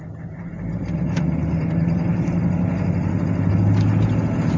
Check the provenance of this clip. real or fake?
real